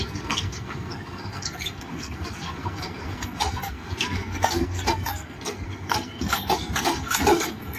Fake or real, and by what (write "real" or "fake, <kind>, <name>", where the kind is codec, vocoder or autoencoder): fake, codec, SNAC